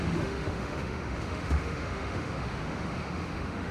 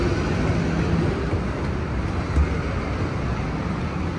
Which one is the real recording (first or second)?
second